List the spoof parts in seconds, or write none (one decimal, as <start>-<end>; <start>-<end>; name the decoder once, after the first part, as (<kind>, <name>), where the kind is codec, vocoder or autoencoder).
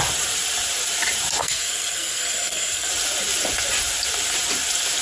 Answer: 1.4-2.9 (codec, SNAC)